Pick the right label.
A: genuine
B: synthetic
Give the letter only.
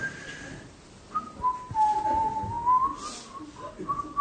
A